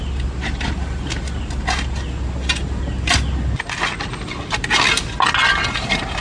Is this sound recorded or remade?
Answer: recorded